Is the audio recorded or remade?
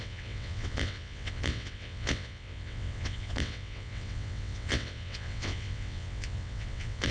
remade